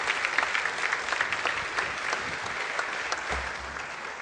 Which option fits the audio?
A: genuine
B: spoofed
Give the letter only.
A